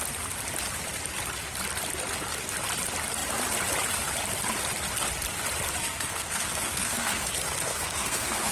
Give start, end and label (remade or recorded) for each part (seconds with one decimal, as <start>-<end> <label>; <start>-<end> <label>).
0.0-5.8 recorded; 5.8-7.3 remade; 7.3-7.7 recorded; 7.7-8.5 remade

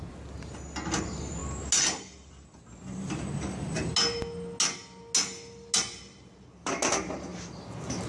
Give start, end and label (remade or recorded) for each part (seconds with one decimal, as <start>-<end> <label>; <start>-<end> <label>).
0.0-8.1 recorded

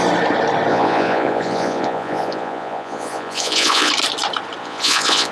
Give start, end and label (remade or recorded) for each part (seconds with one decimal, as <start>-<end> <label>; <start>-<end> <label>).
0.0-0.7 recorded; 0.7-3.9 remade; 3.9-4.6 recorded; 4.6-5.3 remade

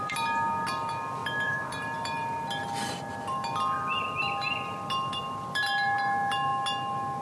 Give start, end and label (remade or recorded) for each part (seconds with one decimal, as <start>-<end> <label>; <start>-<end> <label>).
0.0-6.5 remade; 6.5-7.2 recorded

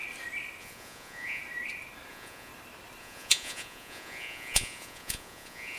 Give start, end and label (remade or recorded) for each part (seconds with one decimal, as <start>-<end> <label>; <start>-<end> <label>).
0.0-0.6 recorded; 0.6-1.4 remade; 1.4-2.1 recorded; 2.1-2.5 remade; 2.5-3.0 recorded; 3.0-5.8 remade

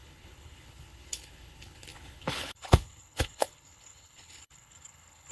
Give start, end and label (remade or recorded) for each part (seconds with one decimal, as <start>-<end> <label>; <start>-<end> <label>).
0.0-5.3 remade